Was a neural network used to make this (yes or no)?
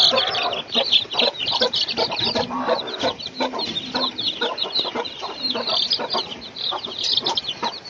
no